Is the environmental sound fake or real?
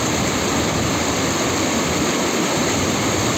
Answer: real